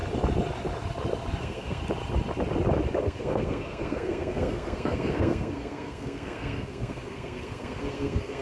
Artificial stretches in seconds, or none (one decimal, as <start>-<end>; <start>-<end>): 1.4-1.8; 3.0-8.4